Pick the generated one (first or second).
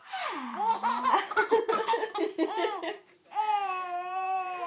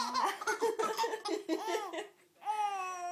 first